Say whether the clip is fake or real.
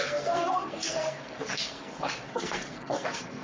fake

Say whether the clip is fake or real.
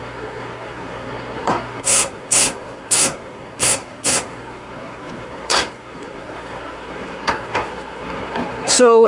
fake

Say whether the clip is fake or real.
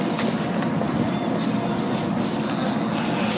real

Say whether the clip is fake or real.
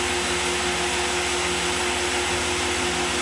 real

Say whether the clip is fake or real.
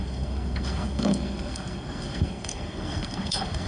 fake